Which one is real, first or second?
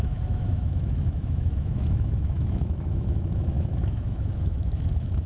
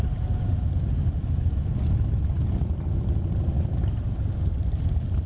second